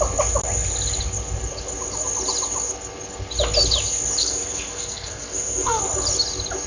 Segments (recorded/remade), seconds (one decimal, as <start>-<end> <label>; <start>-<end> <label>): 0.0-4.2 recorded; 4.2-5.8 remade; 5.8-6.7 recorded